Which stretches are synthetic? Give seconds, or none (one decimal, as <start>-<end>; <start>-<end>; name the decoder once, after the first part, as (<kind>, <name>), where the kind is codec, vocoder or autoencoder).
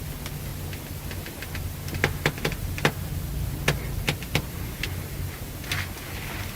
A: none